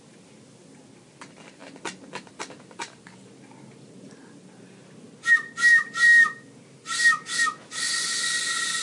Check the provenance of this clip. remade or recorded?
recorded